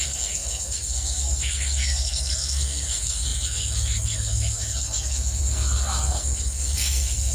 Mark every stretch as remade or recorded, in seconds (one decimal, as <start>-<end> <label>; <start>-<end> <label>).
0.0-7.3 remade